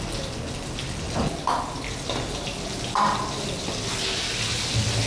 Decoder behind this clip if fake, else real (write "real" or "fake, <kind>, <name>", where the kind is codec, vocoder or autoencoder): real